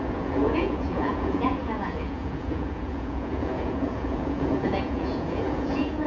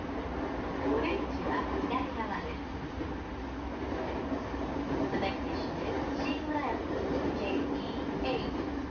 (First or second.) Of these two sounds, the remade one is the first